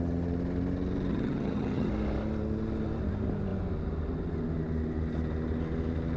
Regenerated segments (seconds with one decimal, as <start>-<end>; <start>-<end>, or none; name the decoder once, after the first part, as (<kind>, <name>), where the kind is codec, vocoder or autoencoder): 1.1-1.9 (vocoder, HiFi-GAN)